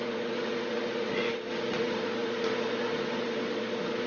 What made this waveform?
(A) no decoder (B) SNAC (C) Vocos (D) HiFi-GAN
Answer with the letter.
C